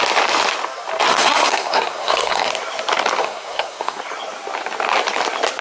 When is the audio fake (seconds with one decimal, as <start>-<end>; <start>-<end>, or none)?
1.1-2.5; 3.2-4.0